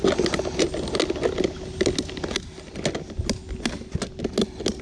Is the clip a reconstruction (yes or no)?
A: no